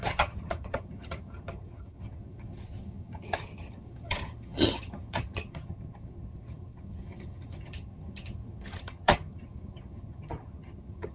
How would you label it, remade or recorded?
remade